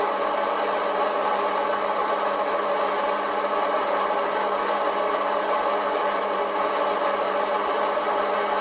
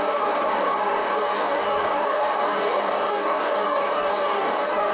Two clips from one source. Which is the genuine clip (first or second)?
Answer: first